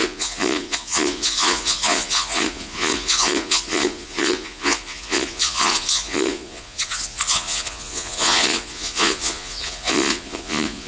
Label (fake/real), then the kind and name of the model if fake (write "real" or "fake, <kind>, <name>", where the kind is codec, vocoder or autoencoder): fake, vocoder, Vocos